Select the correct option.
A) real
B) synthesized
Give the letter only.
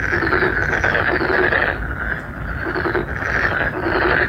A